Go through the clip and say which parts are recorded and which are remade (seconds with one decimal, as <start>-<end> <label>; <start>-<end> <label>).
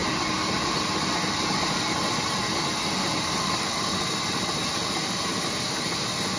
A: 0.0-6.4 recorded